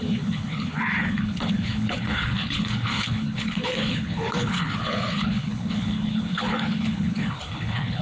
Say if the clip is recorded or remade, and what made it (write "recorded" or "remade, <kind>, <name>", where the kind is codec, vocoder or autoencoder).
remade, codec, HILCodec